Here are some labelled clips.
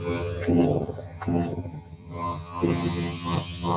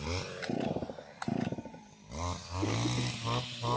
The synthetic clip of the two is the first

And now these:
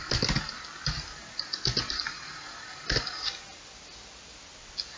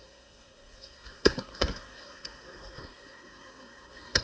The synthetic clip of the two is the second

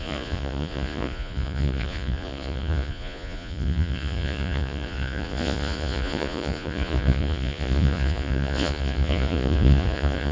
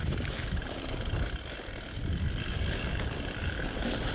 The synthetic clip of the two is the first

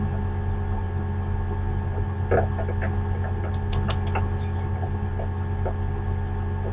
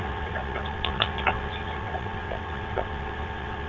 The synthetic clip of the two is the second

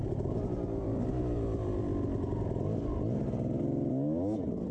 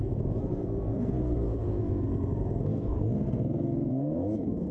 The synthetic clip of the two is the second